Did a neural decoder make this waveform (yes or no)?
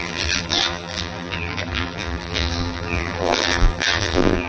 yes